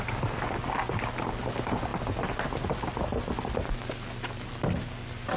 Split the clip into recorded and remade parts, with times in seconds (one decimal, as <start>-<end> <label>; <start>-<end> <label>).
0.0-5.4 recorded